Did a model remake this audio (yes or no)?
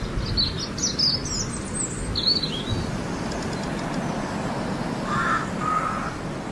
no